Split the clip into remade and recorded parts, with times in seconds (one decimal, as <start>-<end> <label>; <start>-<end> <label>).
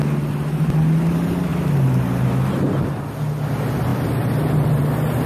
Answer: 0.0-3.9 recorded; 3.9-4.7 remade; 4.7-5.3 recorded